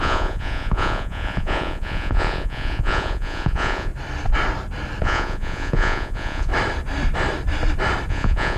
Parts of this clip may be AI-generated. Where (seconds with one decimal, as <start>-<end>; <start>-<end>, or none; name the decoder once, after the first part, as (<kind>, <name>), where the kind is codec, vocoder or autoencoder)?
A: 0.0-3.9 (vocoder, Vocos); 5.0-6.5; 8.1-8.6